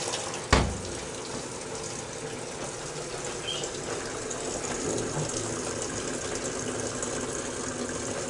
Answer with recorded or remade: recorded